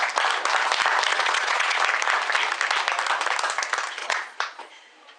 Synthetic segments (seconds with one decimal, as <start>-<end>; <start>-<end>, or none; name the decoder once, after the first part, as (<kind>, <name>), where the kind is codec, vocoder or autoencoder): 1.1-1.8 (vocoder, Vocos); 4.0-4.7